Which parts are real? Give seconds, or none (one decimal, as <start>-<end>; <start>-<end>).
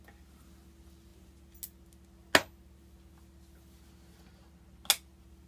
0.0-5.5